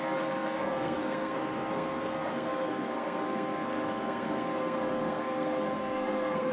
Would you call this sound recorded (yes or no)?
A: no